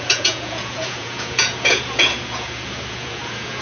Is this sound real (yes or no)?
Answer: no